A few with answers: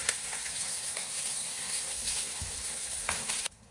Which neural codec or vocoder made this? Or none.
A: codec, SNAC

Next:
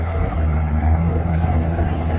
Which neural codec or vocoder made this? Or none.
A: codec, SNAC